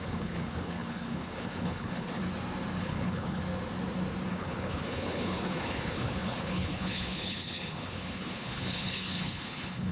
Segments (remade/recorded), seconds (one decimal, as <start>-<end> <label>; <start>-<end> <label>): 0.0-2.2 remade; 2.2-2.8 recorded; 2.8-3.4 remade; 3.4-4.3 recorded; 4.3-9.9 remade